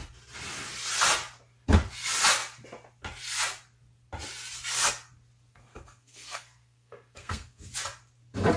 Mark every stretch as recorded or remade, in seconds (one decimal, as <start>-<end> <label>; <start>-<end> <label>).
0.0-5.5 recorded; 5.5-7.7 remade; 7.7-8.6 recorded